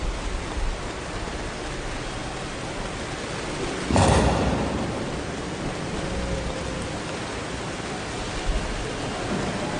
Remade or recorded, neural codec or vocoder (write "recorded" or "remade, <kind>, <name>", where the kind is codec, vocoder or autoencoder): recorded